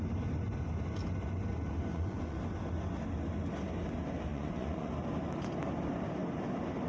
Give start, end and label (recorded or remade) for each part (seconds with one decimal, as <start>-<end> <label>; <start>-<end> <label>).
0.0-1.9 recorded; 1.9-2.4 remade; 2.4-4.3 recorded; 4.3-4.9 remade; 4.9-6.9 recorded